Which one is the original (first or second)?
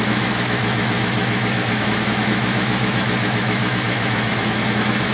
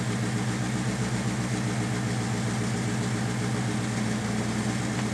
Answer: second